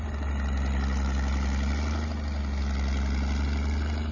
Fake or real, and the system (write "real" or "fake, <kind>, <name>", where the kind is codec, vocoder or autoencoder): real